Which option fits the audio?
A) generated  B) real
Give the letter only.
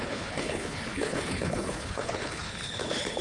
A